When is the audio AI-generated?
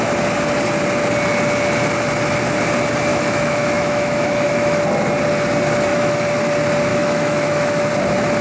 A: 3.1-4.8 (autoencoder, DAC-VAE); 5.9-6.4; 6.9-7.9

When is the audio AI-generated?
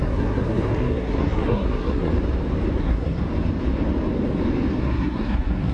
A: 0.0-2.1 (codec, SNAC); 2.8-3.2; 4.7-5.7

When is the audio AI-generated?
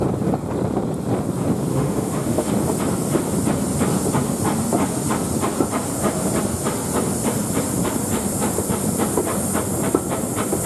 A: 1.7-2.5 (autoencoder, DAC-VAE)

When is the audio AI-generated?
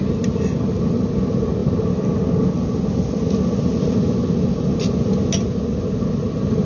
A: none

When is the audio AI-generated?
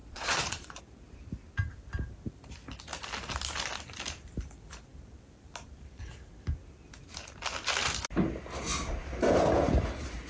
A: 0.0-0.8 (vocoder, Vocos)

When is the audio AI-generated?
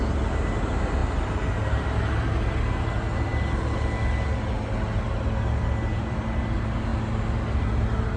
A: none